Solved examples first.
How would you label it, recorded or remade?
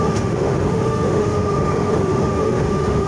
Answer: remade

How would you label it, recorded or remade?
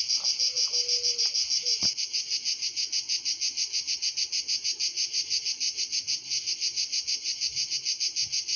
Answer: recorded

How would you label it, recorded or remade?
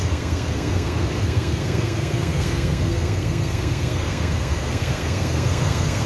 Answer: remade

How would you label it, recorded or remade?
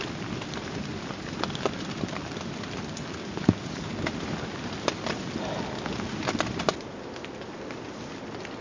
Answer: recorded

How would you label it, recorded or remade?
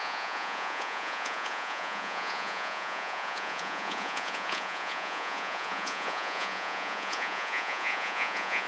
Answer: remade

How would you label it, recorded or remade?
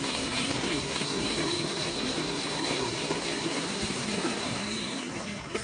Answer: remade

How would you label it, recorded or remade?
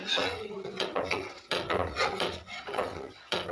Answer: remade